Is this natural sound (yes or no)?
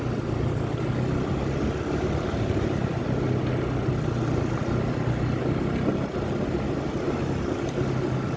yes